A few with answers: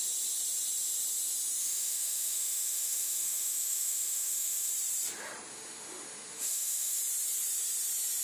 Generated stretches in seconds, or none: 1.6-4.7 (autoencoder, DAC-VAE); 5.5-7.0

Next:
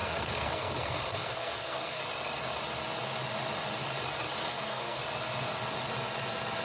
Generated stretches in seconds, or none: 0.0-2.0 (codec, SNAC); 4.4-5.0